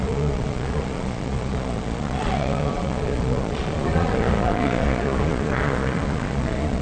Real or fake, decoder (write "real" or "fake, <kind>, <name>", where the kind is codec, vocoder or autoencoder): fake, vocoder, Vocos